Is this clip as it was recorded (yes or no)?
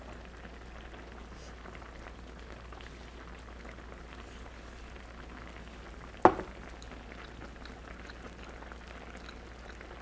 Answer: yes